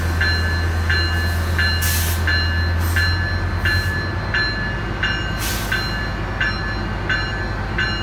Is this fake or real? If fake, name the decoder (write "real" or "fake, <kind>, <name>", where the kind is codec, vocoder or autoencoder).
real